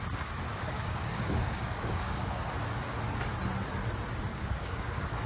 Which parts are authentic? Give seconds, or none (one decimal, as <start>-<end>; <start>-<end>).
0.0-0.5; 2.4-4.3